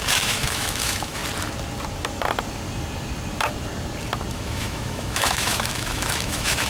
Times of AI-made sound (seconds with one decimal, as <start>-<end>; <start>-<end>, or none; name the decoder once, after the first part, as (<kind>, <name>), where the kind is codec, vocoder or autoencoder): 0.0-1.2 (autoencoder, DAC-VAE); 4.3-6.7